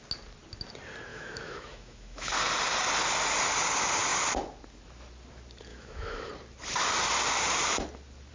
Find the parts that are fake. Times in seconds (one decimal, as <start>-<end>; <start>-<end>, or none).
1.1-2.3; 5.7-6.3